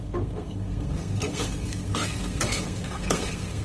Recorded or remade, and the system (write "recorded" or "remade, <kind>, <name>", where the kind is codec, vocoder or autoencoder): remade, codec, SNAC